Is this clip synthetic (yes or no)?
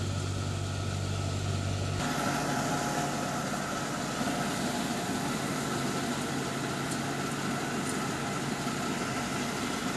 no